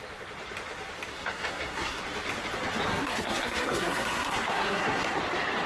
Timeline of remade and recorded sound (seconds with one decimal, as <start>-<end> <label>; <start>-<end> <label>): 0.0-1.1 recorded; 1.1-2.0 remade; 2.0-2.9 recorded; 2.9-5.2 remade; 5.2-5.7 recorded